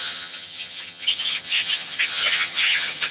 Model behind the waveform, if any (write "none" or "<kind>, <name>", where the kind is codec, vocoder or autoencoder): vocoder, HiFi-GAN